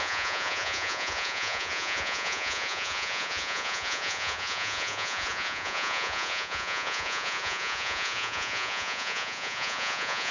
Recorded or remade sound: remade